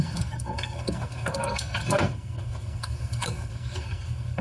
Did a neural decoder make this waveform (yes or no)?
yes